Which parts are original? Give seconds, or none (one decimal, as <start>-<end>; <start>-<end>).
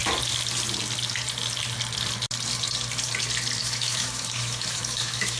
0.0-3.6